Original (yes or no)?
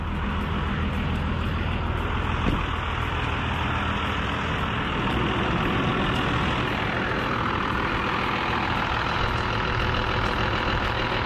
yes